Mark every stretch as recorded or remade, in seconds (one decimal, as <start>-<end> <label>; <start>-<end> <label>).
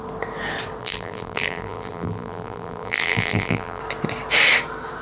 0.0-0.8 recorded; 0.8-3.8 remade; 3.8-5.0 recorded